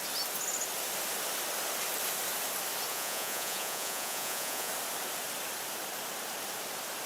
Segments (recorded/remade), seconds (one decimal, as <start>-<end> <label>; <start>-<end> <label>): 0.0-2.9 recorded; 2.9-4.7 remade; 4.7-7.1 recorded